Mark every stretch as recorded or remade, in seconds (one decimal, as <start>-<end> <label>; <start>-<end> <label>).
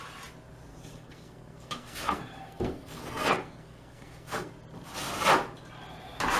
0.0-0.7 recorded; 0.7-4.5 remade; 4.5-6.4 recorded